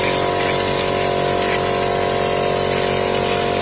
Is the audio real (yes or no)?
yes